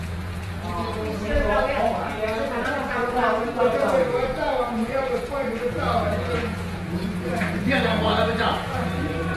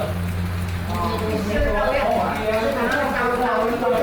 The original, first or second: second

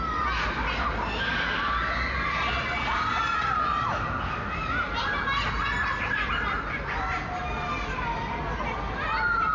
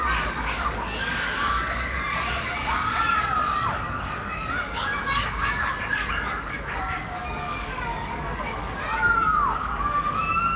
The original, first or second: first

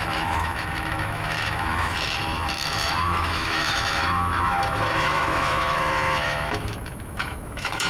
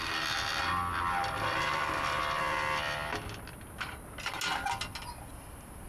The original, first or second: second